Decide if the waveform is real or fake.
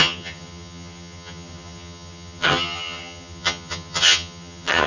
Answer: fake